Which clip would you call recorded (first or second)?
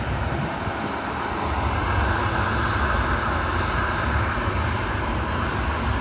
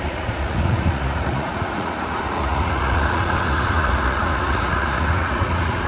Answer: first